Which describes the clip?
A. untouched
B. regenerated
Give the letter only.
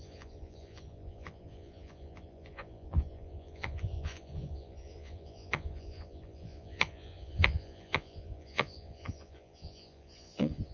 B